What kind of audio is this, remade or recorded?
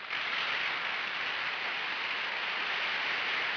recorded